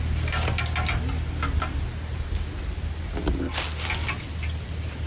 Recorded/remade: recorded